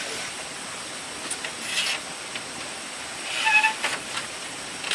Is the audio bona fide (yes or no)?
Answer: yes